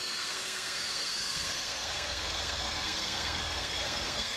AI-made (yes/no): yes